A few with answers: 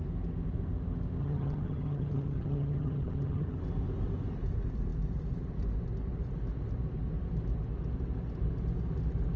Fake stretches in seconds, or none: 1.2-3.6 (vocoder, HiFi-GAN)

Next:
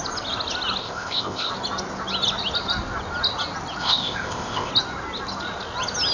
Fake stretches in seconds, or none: 0.8-1.5 (codec, ZipCodec); 3.8-4.7